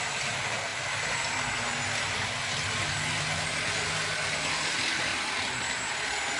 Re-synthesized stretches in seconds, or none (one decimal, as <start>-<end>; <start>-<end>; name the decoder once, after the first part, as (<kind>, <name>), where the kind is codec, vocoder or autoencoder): none